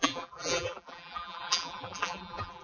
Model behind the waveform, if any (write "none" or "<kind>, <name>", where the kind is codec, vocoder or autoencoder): vocoder, BigVGAN v2